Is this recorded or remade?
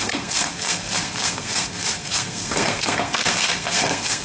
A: remade